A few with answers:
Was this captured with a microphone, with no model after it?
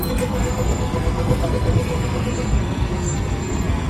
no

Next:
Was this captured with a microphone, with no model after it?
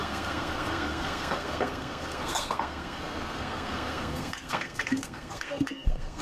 no